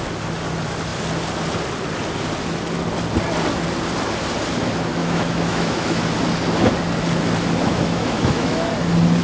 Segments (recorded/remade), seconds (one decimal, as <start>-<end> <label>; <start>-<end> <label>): 0.0-5.0 recorded; 5.0-6.0 remade; 6.0-7.6 recorded; 7.6-8.7 remade; 8.7-9.2 recorded